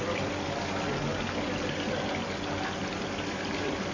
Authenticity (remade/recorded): recorded